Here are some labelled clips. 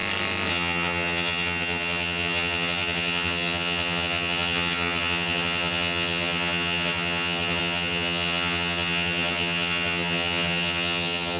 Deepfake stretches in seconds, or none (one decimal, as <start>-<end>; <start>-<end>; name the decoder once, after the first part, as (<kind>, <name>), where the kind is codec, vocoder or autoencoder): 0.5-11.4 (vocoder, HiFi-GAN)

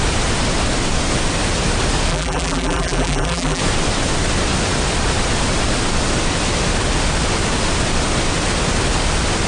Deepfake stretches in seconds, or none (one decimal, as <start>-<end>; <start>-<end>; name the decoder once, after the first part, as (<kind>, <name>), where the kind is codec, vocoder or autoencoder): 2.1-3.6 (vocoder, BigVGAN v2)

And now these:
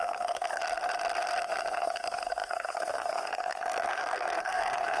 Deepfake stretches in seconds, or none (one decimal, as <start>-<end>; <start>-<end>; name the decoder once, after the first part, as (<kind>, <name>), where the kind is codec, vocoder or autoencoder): 0.0-0.6 (codec, SNAC); 1.8-5.0

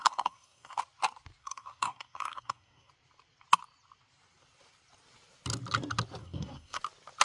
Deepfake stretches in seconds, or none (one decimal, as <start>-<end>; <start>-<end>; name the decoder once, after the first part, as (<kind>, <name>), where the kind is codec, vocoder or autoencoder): 0.0-0.8 (codec, SNAC); 1.4-2.9; 6.2-6.8

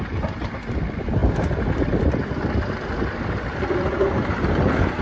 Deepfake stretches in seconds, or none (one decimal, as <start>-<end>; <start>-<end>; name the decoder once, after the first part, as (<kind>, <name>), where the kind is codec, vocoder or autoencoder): none

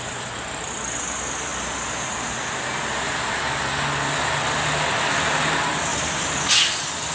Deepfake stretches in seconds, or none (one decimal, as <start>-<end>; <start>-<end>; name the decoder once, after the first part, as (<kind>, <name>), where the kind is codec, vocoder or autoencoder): 5.9-7.1 (vocoder, BigVGAN v2)

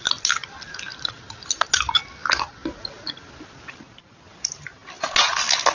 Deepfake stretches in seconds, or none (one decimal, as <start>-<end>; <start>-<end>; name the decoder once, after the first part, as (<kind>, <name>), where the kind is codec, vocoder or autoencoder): none